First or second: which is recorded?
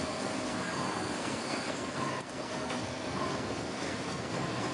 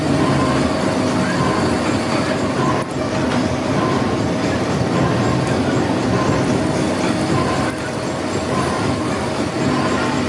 second